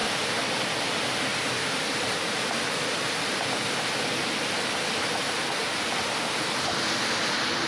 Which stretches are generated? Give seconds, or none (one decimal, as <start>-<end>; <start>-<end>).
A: 0.0-0.6; 1.3-3.0